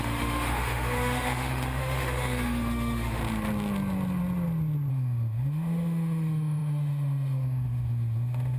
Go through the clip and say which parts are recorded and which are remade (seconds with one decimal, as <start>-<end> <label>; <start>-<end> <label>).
0.0-3.2 remade; 3.2-4.9 recorded; 4.9-8.6 remade